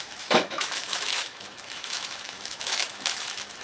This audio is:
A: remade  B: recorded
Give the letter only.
A